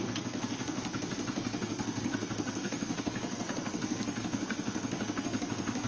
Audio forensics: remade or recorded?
remade